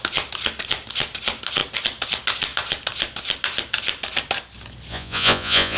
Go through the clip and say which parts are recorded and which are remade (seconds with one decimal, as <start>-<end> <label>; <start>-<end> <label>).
0.0-4.9 recorded; 4.9-5.8 remade